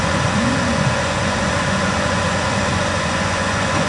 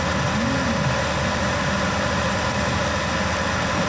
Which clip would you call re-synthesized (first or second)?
first